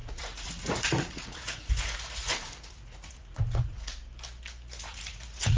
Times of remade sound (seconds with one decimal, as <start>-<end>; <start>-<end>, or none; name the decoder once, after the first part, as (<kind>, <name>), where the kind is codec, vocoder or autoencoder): 0.0-3.9 (vocoder, Vocos); 4.8-5.6